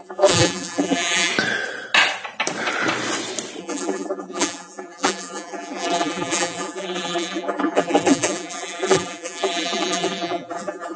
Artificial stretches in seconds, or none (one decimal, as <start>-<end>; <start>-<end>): 0.0-1.3; 3.6-11.0